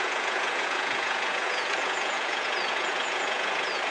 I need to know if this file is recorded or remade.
remade